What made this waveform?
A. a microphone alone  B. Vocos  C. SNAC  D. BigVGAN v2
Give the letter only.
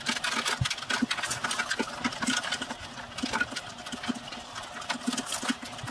A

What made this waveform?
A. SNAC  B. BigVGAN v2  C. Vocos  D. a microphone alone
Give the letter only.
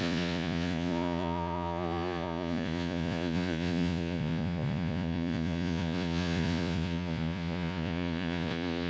C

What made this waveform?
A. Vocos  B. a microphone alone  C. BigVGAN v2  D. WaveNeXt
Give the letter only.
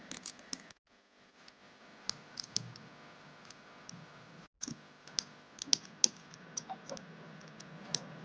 B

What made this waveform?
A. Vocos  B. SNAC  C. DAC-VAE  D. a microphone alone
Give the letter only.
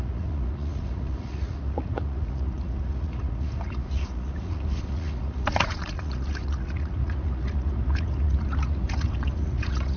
A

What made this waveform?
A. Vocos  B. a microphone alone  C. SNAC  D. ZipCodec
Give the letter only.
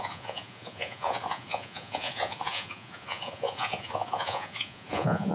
A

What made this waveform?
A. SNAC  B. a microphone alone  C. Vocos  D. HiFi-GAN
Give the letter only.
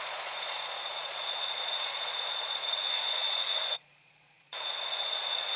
C